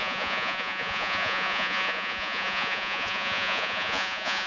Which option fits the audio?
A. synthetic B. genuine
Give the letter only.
A